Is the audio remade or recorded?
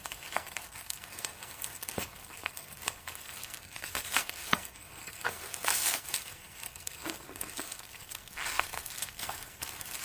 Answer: remade